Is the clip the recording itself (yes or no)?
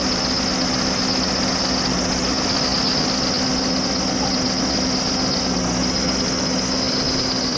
yes